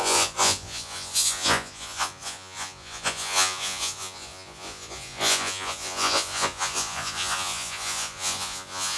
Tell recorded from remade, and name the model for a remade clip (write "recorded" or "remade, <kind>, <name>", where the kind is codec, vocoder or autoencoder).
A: remade, vocoder, Vocos